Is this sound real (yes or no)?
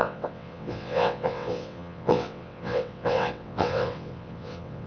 no